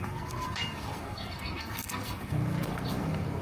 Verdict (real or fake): fake